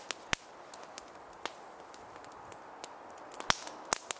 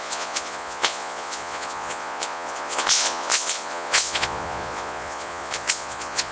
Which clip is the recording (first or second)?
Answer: first